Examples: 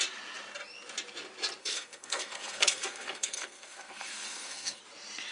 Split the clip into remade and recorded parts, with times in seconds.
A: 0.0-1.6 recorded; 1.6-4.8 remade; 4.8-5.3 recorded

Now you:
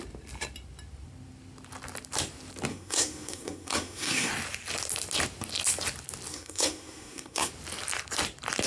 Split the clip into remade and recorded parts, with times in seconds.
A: 0.0-2.7 recorded; 2.7-4.3 remade; 4.3-6.3 recorded; 6.3-7.5 remade; 7.5-8.7 recorded

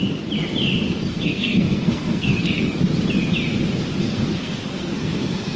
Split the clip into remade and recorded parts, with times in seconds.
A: 0.0-1.1 recorded; 1.1-2.8 remade; 2.8-4.0 recorded; 4.0-5.6 remade

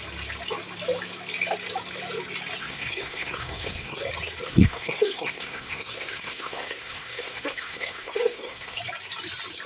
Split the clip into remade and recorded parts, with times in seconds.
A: 0.0-2.6 recorded; 2.6-4.1 remade; 4.1-4.5 recorded; 4.5-8.8 remade; 8.8-9.7 recorded

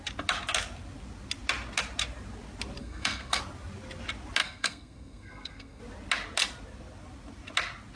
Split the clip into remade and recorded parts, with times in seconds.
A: 0.0-2.8 recorded; 2.8-3.4 remade; 3.4-4.4 recorded; 4.4-5.8 remade; 5.8-8.0 recorded

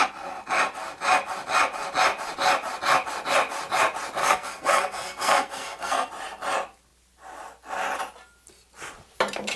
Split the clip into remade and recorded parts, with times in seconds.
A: 0.0-4.2 recorded; 4.2-6.1 remade; 6.1-9.6 recorded